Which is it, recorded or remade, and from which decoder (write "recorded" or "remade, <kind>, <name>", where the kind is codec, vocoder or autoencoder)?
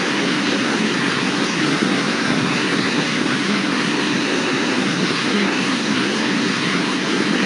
remade, codec, SNAC